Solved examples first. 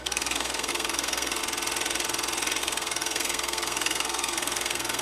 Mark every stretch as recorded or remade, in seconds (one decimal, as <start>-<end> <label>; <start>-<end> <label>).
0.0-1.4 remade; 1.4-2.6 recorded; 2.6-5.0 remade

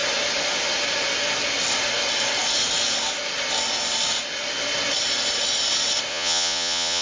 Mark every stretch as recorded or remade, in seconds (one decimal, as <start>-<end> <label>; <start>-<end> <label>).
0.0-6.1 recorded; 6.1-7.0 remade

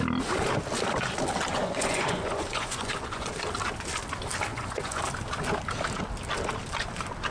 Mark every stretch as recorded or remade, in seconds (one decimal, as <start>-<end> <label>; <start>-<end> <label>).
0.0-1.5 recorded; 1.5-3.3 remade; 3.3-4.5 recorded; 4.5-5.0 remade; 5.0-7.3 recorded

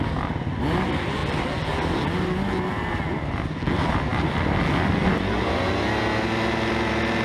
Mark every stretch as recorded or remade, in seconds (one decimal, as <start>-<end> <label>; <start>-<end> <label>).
0.0-7.2 recorded

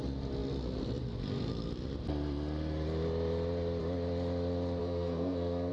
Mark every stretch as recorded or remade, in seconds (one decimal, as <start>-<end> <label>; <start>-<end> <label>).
0.0-4.8 recorded; 4.8-5.7 remade

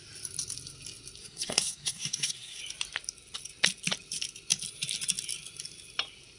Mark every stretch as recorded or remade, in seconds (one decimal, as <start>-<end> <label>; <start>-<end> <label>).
0.0-1.2 recorded; 1.2-2.6 remade; 2.6-6.4 recorded

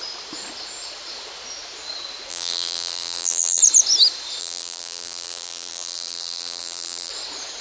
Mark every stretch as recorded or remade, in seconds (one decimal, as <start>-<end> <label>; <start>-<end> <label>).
0.0-2.3 recorded; 2.3-3.6 remade; 3.6-4.4 recorded; 4.4-7.1 remade; 7.1-7.6 recorded